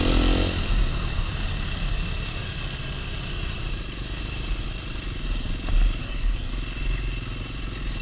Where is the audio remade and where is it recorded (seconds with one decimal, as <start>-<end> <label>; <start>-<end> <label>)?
0.0-6.0 recorded; 6.0-6.5 remade; 6.5-8.0 recorded